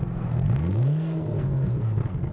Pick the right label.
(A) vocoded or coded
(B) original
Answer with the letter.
A